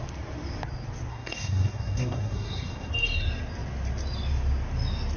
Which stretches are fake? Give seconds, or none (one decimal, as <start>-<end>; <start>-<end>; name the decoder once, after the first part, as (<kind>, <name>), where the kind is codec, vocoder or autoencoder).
1.1-2.9 (codec, SNAC)